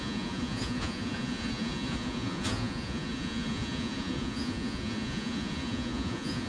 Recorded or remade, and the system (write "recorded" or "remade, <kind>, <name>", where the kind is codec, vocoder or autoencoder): remade, vocoder, Vocos